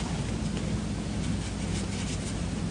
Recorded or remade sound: recorded